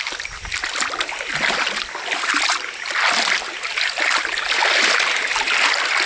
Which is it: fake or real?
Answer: real